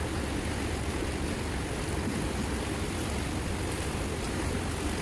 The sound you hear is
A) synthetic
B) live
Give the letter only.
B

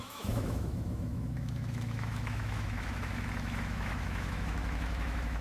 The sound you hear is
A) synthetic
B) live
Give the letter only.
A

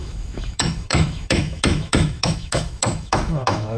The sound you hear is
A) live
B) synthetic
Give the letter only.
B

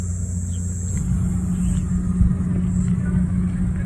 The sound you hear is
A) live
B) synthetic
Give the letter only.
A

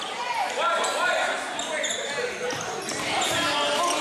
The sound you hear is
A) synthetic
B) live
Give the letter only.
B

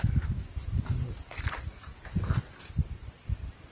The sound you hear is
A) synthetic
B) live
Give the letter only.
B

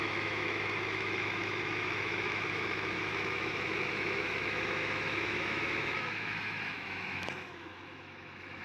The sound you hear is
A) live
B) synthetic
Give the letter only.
B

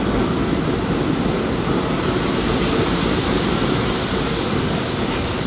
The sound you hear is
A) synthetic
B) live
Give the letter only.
B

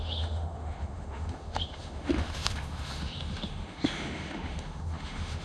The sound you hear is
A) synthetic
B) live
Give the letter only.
A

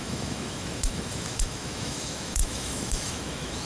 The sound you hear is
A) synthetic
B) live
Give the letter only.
A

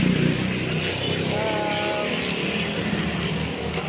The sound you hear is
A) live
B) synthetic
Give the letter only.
A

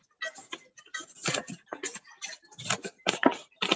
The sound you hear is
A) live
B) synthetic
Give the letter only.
A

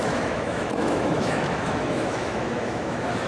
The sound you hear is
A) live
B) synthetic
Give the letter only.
B